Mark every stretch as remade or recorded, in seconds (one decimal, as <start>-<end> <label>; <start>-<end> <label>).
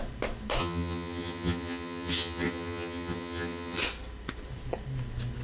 0.0-0.6 recorded; 0.6-3.8 remade; 3.8-5.4 recorded